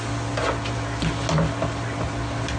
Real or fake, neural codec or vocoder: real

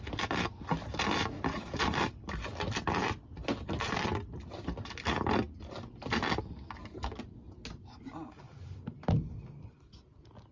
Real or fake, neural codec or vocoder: real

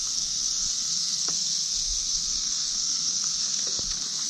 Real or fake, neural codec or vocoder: fake, codec, SNAC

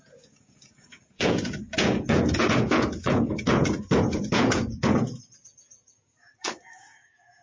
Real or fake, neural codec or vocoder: fake, vocoder, Vocos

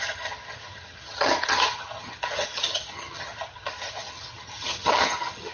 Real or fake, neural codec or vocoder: fake, vocoder, HiFi-GAN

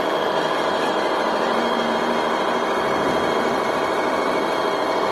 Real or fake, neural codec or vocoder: fake, vocoder, BigVGAN v2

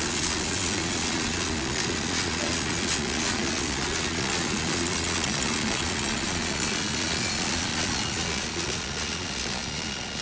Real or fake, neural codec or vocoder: fake, vocoder, Vocos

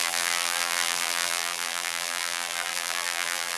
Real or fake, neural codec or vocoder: fake, vocoder, BigVGAN v2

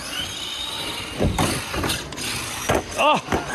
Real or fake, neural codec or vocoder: real